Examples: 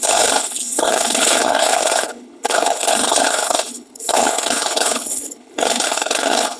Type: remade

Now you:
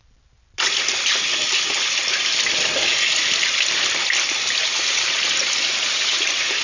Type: recorded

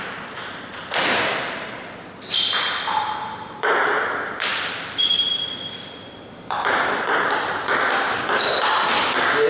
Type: remade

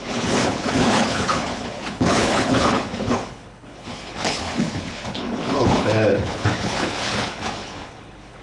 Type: remade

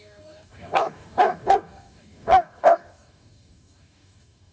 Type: remade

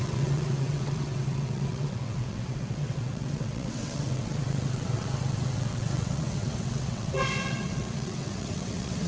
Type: remade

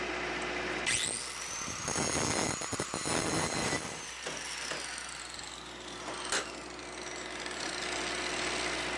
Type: recorded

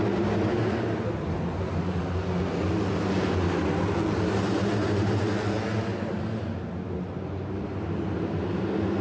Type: recorded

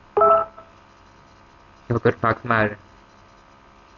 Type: recorded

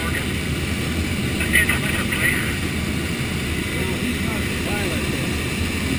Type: recorded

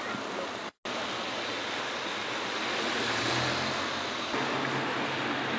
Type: recorded